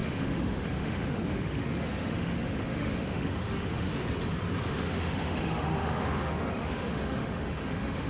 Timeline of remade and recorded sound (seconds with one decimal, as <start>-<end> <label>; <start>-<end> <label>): 0.0-3.9 remade; 3.9-4.7 recorded; 4.7-8.1 remade